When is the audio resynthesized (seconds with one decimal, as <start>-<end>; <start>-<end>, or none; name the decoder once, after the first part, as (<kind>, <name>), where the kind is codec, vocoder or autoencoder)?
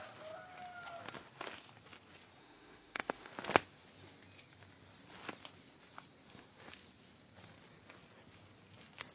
2.4-3.3 (autoencoder, DAC-VAE)